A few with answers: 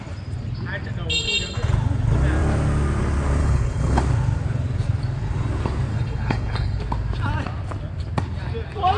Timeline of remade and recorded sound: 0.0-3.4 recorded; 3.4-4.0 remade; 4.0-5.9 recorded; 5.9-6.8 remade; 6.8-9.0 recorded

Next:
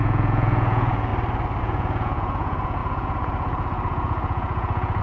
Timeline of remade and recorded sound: 0.0-1.1 remade; 1.1-1.6 recorded; 1.6-5.0 remade

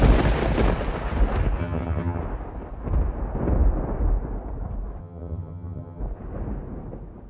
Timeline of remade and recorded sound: 0.0-1.6 recorded; 1.6-2.2 remade; 2.2-5.0 recorded; 5.0-6.0 remade; 6.0-7.3 recorded

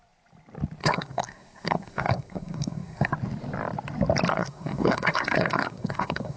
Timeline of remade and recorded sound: 0.0-0.8 recorded; 0.8-3.1 remade; 3.1-4.3 recorded; 4.3-6.4 remade